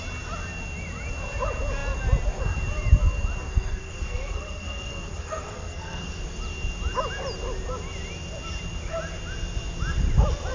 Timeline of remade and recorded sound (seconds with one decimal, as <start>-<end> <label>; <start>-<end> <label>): 0.0-3.5 recorded; 3.5-6.2 remade; 6.2-10.5 recorded